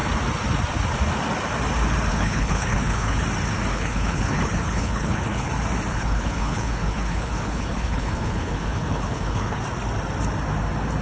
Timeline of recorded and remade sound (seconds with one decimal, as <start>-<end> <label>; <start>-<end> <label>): 0.0-2.1 recorded; 2.1-3.2 remade; 3.2-3.7 recorded; 3.7-5.5 remade; 5.5-5.9 recorded; 5.9-9.6 remade; 9.6-11.0 recorded